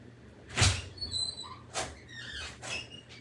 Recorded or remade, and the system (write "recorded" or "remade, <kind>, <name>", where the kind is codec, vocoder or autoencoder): recorded